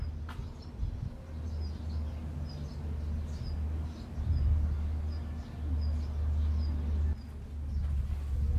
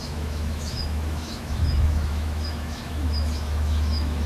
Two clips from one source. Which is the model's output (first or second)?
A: second